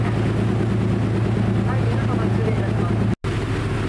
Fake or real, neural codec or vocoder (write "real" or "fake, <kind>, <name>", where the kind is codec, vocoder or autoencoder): real